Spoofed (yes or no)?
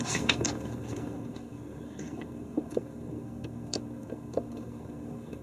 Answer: yes